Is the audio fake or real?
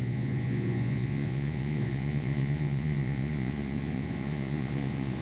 fake